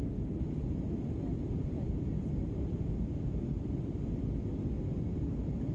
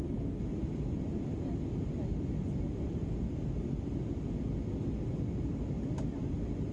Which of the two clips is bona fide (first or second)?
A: second